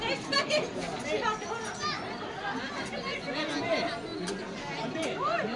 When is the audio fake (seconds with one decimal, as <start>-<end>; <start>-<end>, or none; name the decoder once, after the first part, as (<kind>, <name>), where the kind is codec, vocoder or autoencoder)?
none